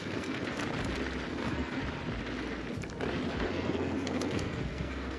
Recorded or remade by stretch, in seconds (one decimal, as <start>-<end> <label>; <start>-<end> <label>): 0.0-0.6 remade; 0.6-1.3 recorded; 1.3-1.8 remade; 1.8-3.3 recorded; 3.3-5.2 remade